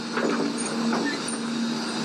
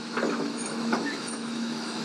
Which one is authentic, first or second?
first